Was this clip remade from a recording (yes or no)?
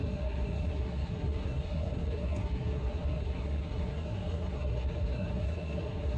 yes